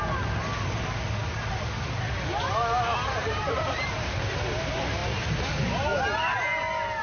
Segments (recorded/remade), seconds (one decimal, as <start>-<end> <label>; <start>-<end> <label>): 0.0-1.2 recorded; 1.2-1.8 remade; 1.8-3.2 recorded; 3.2-4.2 remade; 4.2-7.0 recorded